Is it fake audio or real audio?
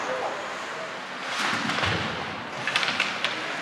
real